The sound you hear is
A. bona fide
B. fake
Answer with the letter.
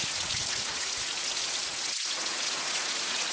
B